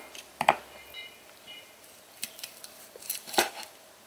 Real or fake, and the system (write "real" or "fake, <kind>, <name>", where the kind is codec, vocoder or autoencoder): fake, vocoder, BigVGAN v2